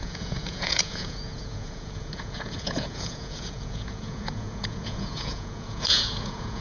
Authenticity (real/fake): fake